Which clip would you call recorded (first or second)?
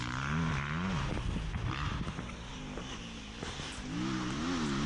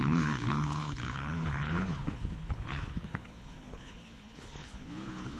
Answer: first